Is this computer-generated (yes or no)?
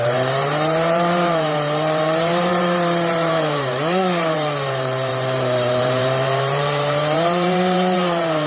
yes